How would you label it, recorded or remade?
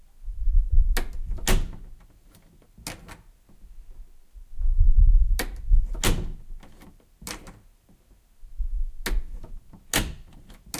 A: recorded